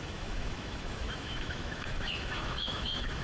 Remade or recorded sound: remade